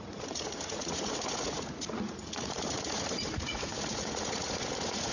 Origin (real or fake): fake